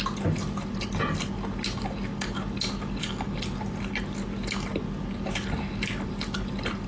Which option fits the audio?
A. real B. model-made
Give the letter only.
A